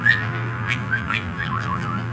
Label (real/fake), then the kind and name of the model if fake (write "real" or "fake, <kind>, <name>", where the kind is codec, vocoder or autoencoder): fake, vocoder, BigVGAN v2